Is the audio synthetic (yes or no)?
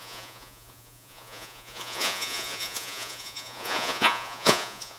yes